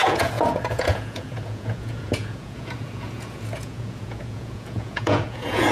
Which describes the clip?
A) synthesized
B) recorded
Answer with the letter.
A